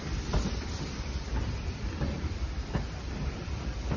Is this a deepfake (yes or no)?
yes